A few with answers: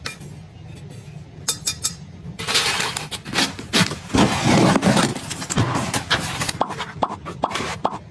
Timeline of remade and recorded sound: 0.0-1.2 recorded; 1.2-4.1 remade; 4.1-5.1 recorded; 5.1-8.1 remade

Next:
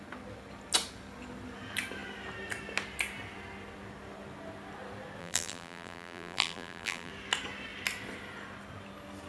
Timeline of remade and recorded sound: 0.0-5.2 recorded; 5.2-7.1 remade; 7.1-9.3 recorded